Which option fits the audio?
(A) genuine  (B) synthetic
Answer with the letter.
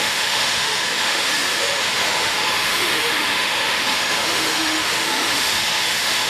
B